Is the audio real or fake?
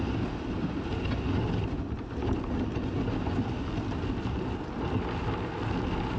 real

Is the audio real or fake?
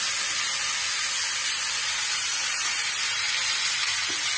real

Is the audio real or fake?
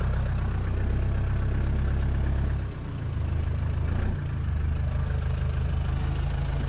real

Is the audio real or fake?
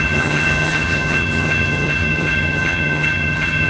fake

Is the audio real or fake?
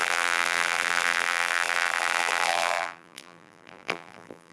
fake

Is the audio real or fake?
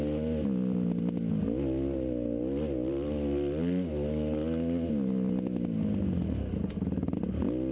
real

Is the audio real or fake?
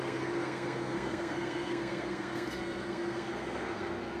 fake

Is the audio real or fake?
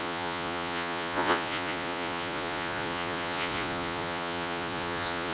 fake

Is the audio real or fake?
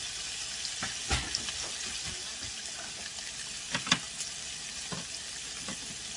real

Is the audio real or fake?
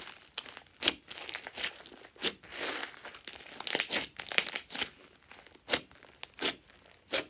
real